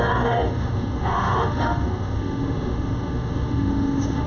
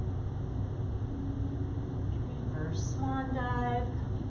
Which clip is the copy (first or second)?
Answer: first